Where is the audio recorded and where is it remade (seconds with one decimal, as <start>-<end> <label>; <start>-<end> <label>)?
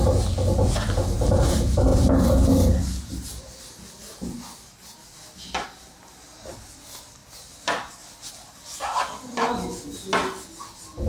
0.0-11.1 recorded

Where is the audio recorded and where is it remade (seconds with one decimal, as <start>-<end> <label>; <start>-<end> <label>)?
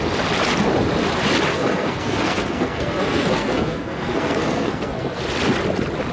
0.0-1.5 recorded; 1.5-5.2 remade; 5.2-6.1 recorded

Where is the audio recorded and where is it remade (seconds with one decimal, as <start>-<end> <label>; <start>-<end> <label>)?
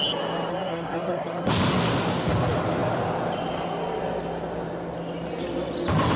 0.0-0.5 recorded; 0.5-1.5 remade; 1.5-6.2 recorded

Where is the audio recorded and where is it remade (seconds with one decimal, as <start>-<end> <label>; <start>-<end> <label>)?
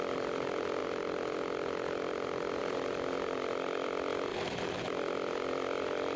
0.0-0.8 remade; 0.8-2.6 recorded; 2.6-6.2 remade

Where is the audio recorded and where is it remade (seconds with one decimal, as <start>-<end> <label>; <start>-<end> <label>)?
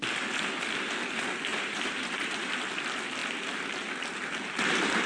0.0-1.5 recorded; 1.5-2.5 remade; 2.5-5.1 recorded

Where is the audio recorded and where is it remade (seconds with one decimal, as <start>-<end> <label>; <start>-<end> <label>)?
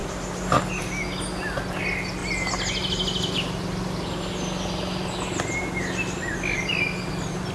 0.0-7.5 recorded